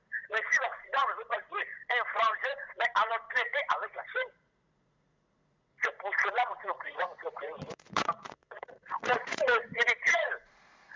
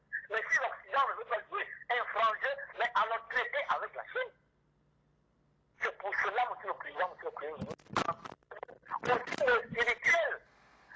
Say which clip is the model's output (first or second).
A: first